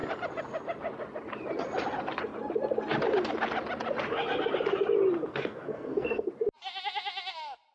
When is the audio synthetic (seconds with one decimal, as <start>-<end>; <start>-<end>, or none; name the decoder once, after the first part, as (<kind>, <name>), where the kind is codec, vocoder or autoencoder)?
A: 5.3-6.3 (codec, SNAC)